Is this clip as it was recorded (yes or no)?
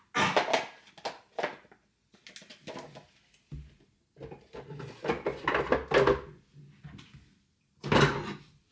yes